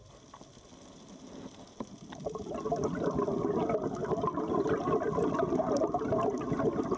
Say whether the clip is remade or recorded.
recorded